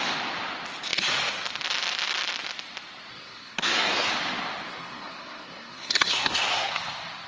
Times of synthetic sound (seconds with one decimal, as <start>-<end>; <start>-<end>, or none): 3.1-4.1; 4.7-6.7

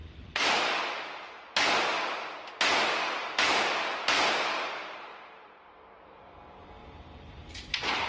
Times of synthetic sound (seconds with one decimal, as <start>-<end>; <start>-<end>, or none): 0.0-0.8; 3.2-6.3; 6.8-8.1

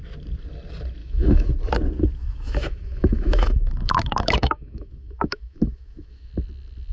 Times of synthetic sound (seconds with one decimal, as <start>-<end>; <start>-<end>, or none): 1.0-1.5; 2.2-6.3

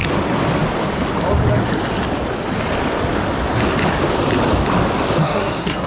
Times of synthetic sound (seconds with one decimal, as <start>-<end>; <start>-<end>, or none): 5.2-5.9

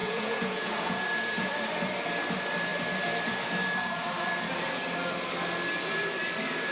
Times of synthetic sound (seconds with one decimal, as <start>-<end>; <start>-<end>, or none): 0.0-1.5

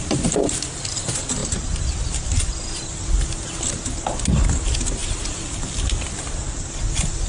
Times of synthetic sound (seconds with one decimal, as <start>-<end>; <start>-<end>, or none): none